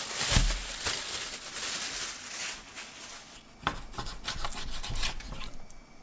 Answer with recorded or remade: recorded